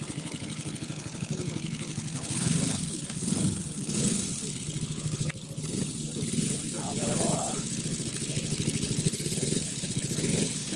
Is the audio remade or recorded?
remade